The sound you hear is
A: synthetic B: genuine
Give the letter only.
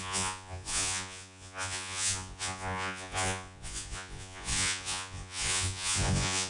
A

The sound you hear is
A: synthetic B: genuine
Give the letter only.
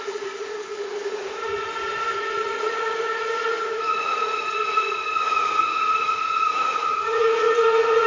A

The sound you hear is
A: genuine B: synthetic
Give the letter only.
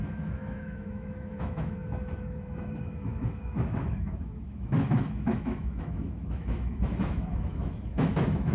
B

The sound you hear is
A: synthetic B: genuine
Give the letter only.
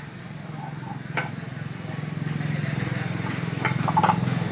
B